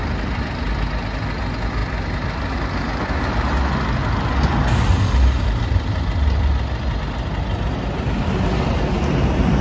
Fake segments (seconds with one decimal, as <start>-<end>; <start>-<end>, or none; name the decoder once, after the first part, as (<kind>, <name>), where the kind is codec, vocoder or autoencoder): none